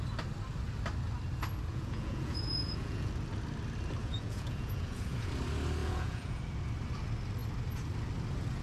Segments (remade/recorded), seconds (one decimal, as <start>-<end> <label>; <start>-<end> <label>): 0.0-1.7 recorded; 1.7-3.1 remade; 3.1-4.0 recorded; 4.0-5.3 remade; 5.3-5.8 recorded; 5.8-6.4 remade; 6.4-8.6 recorded